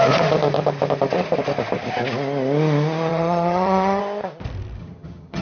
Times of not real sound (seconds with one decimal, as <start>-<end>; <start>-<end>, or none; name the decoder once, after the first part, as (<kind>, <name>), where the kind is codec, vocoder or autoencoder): 3.1-4.0 (vocoder, HiFi-GAN); 4.8-5.4